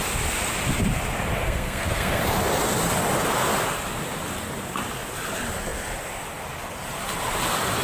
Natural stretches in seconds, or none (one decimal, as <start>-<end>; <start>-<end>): 0.0-1.3; 2.2-7.8